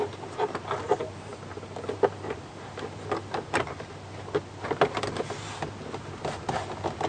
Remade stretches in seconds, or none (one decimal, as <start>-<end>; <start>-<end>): none

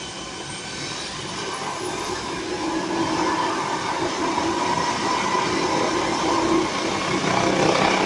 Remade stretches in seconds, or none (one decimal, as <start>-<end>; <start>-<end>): none